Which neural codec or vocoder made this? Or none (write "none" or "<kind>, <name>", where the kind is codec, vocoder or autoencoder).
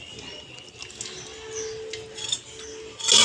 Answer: none